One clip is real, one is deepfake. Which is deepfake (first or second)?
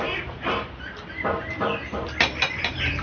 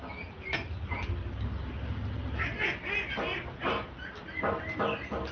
first